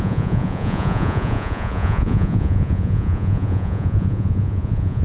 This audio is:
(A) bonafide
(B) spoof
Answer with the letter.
B